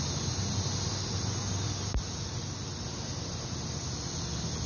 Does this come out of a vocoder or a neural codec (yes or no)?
no